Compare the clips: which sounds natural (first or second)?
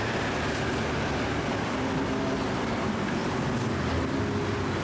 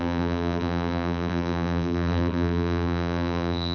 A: first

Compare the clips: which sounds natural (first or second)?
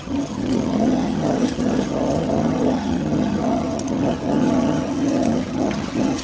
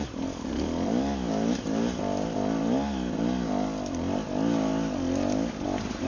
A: second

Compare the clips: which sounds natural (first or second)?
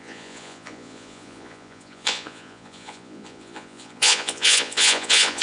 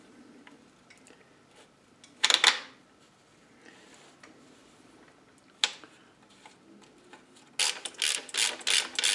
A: second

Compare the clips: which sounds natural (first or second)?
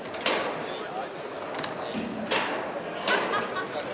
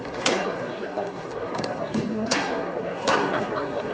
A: first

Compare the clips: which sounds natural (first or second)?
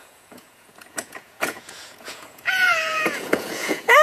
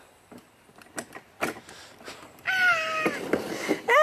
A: second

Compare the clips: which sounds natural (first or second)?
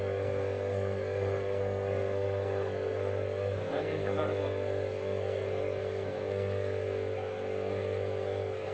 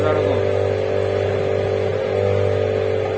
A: second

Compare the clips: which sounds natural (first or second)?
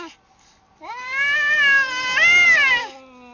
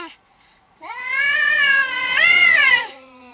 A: first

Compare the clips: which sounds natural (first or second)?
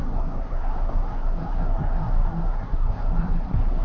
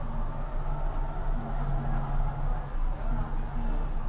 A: second